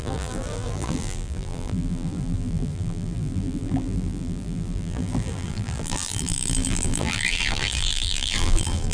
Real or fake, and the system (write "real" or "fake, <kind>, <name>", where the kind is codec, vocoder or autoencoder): fake, vocoder, BigVGAN v2